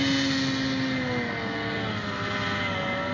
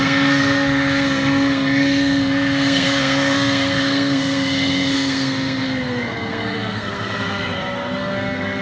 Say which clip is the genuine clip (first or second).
first